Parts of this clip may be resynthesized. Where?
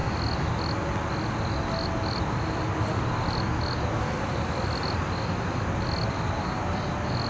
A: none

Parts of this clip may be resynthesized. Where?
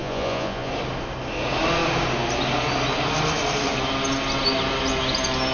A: 0.0-0.7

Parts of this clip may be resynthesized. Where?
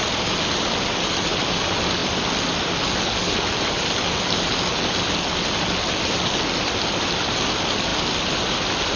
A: none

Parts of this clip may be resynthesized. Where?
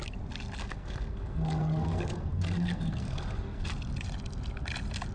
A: 0.6-3.7